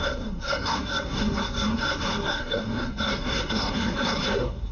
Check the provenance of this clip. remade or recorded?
remade